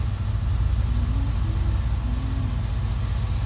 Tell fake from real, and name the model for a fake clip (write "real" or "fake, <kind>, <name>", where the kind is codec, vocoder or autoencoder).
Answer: real